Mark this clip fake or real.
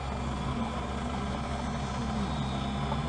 real